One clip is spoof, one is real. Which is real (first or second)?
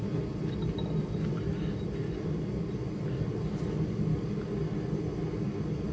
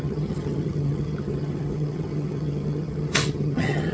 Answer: first